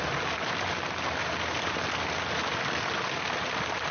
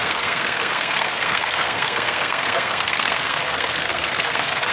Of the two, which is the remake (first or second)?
second